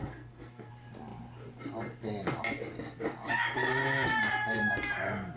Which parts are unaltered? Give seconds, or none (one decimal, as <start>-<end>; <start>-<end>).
0.7-5.4